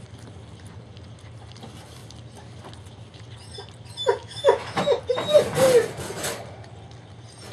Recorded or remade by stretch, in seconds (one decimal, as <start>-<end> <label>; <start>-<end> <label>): 0.0-4.2 recorded; 4.2-5.0 remade; 5.0-7.5 recorded